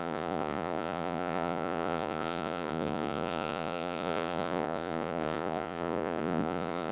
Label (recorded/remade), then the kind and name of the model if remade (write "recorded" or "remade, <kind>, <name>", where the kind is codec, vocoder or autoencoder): remade, vocoder, Vocos